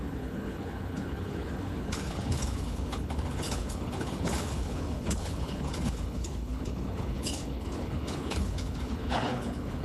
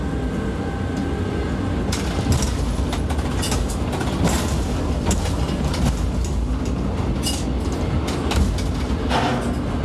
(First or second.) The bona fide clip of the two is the second